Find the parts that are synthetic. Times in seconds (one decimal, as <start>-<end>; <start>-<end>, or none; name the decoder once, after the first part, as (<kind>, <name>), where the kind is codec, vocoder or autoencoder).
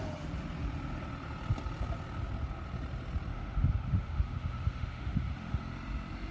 3.3-5.7 (autoencoder, DAC-VAE)